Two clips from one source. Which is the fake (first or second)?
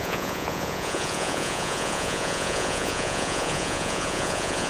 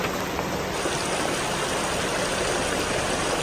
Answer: first